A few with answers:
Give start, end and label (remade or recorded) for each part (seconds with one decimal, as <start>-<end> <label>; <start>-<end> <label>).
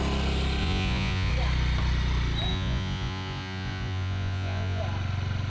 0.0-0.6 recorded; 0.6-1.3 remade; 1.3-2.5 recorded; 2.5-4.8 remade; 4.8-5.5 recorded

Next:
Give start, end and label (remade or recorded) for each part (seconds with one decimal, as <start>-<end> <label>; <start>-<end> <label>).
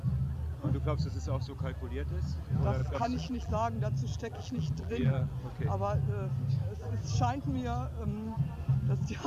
0.0-2.8 recorded; 2.8-3.5 remade; 3.5-4.1 recorded; 4.1-5.3 remade; 5.3-9.3 recorded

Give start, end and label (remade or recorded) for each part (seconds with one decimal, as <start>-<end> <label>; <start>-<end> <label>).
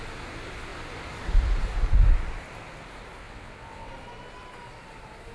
0.0-3.2 recorded; 3.2-3.9 remade; 3.9-5.3 recorded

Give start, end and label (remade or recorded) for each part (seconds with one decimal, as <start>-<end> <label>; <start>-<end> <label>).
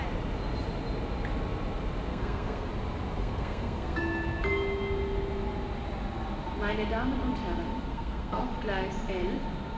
0.0-2.1 recorded; 2.1-2.7 remade; 2.7-3.2 recorded; 3.2-4.0 remade; 4.0-7.9 recorded; 7.9-8.5 remade; 8.5-9.8 recorded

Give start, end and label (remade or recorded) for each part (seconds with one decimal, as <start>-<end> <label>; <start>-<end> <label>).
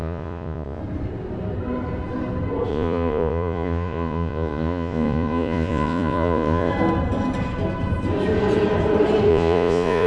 0.0-0.8 remade; 0.8-2.7 recorded; 2.7-6.7 remade; 6.7-9.3 recorded; 9.3-10.1 remade